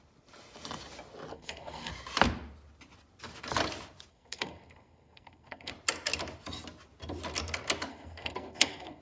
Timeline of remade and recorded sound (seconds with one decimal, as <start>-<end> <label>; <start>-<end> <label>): 0.0-1.3 recorded; 1.3-1.9 remade; 1.9-4.1 recorded; 4.1-5.7 remade; 5.7-7.9 recorded; 7.9-9.0 remade